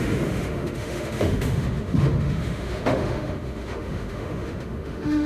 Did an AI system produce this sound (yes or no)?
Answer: yes